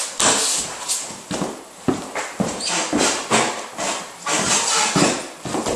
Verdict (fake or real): real